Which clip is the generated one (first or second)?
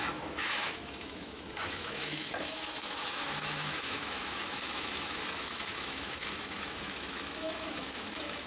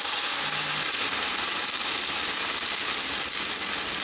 first